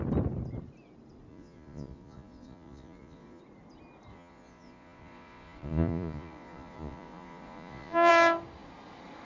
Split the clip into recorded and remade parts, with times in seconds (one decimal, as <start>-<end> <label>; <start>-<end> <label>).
0.0-1.3 recorded; 1.3-3.4 remade; 3.4-4.1 recorded; 4.1-8.1 remade; 8.1-9.2 recorded